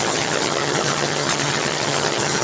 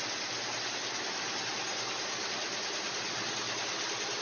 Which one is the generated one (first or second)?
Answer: first